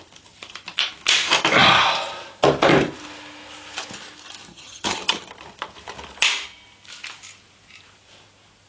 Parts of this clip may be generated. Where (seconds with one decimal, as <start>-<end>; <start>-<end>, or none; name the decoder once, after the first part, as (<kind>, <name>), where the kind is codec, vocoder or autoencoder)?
4.5-5.3 (vocoder, HiFi-GAN)